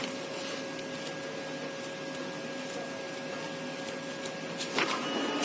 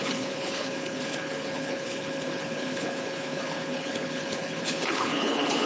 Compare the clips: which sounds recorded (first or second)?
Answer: first